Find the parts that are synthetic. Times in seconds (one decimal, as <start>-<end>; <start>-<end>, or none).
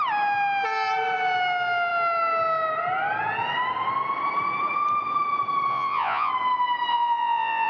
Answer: 5.7-6.3; 6.9-7.7